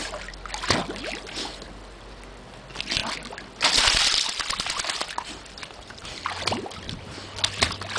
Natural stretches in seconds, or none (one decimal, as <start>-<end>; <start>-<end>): 0.0-8.0